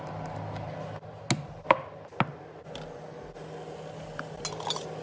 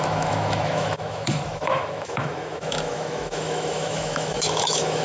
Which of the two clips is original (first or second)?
first